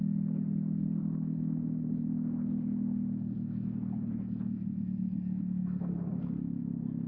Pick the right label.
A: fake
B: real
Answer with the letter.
B